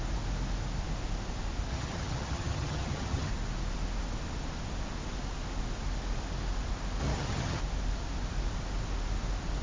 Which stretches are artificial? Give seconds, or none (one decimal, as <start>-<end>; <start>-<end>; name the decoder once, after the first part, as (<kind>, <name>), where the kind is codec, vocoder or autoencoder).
1.7-3.3 (vocoder, HiFi-GAN); 7.0-7.6